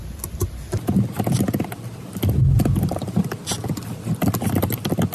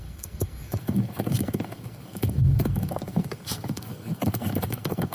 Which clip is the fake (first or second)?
second